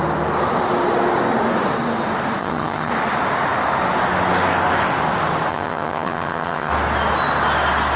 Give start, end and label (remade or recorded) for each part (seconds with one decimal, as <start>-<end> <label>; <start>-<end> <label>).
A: 0.0-2.4 recorded; 2.4-2.9 remade; 2.9-5.5 recorded; 5.5-6.7 remade; 6.7-8.0 recorded